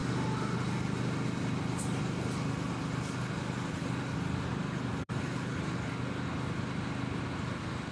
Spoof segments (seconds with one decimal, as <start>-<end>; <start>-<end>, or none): 4.9-6.0